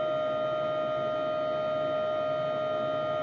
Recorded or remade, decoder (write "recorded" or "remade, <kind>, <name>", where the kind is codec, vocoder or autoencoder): recorded